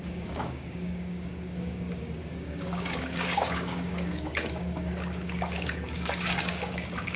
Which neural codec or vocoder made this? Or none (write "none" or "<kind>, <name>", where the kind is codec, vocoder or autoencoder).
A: codec, DAC